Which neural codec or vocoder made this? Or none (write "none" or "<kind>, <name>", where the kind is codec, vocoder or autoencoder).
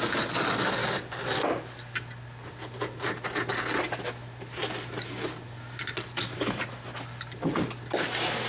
none